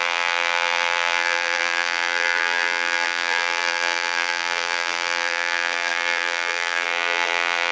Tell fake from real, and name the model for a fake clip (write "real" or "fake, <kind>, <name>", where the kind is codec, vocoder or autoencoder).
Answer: fake, vocoder, BigVGAN v2